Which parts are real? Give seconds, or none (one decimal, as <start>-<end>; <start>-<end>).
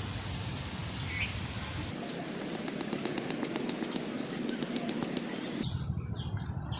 0.0-6.8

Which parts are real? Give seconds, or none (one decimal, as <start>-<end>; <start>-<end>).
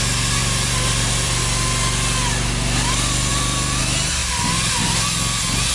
0.0-0.4; 1.4-3.3; 3.8-4.2; 4.7-5.7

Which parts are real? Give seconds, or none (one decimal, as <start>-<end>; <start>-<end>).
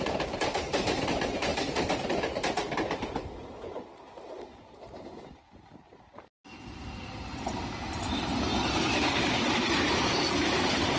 1.5-3.0; 8.5-9.0